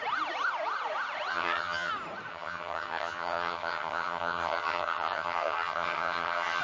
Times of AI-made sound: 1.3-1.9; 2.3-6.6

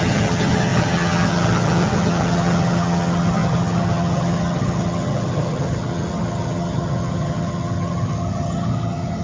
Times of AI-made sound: 0.0-9.2

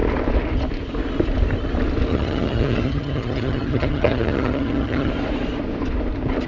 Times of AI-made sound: 2.1-5.1

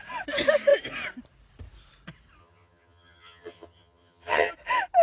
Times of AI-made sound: 2.4-4.5

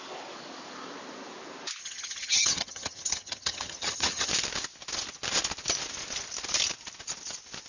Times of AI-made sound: 1.8-4.3